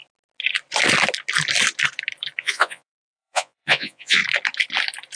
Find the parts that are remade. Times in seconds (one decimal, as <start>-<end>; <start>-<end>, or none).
2.4-4.2